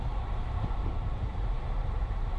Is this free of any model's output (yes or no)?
no